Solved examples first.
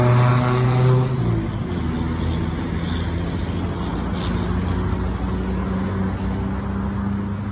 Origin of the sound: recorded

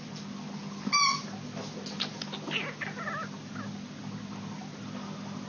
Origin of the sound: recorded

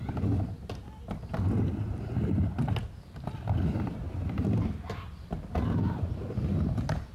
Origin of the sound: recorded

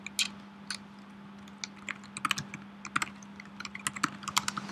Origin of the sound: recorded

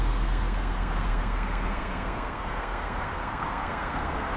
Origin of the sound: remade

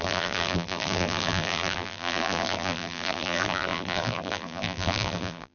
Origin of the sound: remade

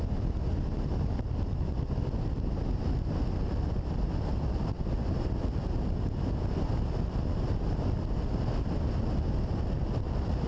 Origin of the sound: recorded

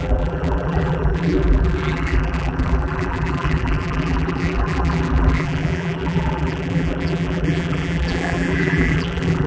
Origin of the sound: remade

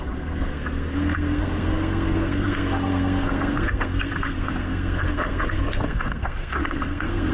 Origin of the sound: remade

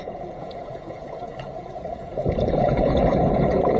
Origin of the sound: remade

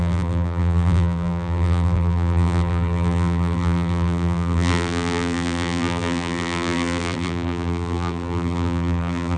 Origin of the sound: remade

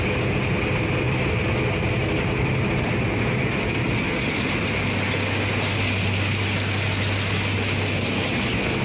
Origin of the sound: recorded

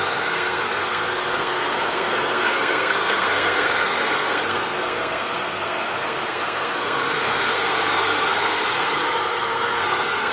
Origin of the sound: remade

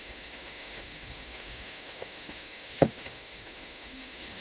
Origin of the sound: remade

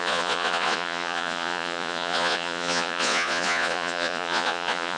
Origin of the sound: remade